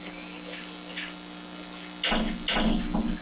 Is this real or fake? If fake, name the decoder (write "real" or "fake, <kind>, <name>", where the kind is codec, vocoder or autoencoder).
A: real